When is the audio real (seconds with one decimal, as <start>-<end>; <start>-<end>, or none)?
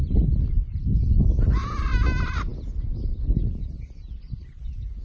0.0-5.0